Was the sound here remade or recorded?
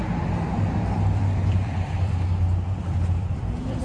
remade